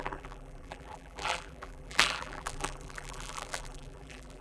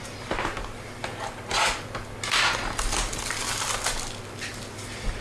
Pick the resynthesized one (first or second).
first